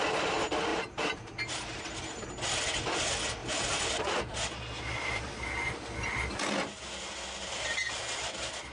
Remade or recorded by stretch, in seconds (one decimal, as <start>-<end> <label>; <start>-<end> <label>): 0.0-0.7 recorded; 0.7-1.8 remade; 1.8-3.4 recorded; 3.4-4.2 remade; 4.2-8.7 recorded